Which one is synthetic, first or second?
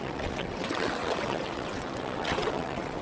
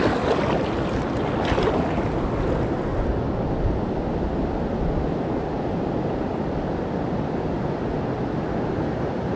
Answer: first